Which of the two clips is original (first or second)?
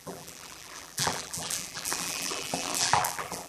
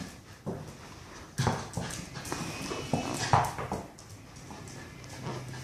second